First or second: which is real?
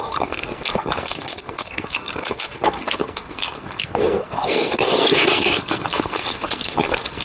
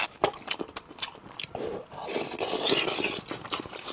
second